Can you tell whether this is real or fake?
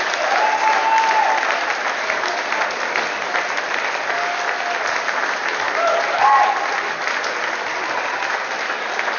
real